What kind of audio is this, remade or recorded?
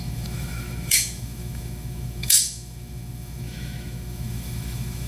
remade